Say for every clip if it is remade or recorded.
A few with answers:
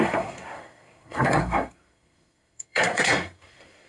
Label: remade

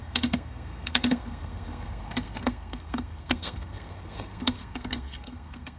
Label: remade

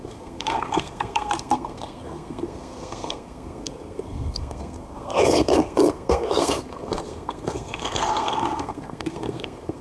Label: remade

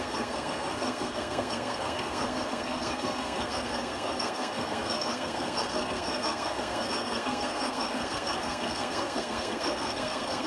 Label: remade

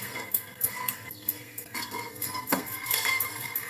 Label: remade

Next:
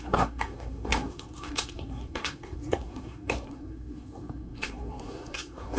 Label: remade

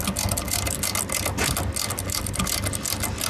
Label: recorded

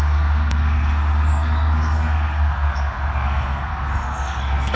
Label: remade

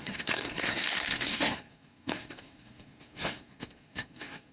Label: remade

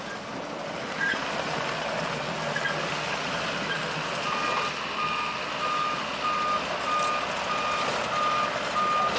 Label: recorded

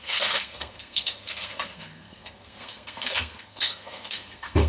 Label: remade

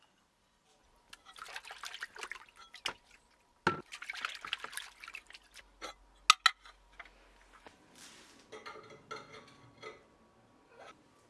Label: recorded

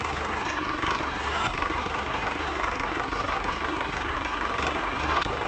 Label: remade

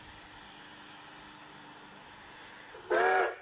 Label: recorded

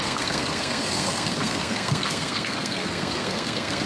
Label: remade